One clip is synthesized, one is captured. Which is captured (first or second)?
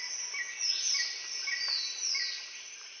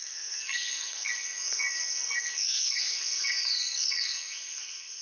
first